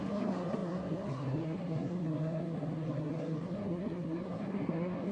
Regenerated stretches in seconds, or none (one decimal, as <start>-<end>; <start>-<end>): 0.0-5.1